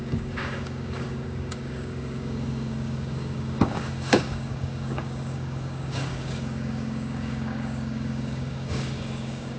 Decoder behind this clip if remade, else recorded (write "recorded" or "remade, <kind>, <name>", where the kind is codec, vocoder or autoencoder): remade, codec, DAC